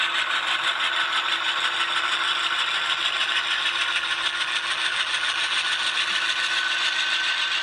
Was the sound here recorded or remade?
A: recorded